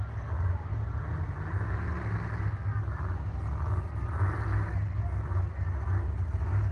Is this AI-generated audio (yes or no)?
no